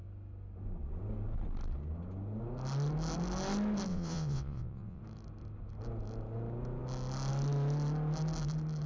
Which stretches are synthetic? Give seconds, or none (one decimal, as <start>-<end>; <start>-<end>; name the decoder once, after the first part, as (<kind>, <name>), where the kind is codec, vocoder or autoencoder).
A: 3.9-5.0 (vocoder, WaveNeXt)